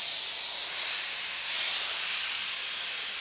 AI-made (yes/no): yes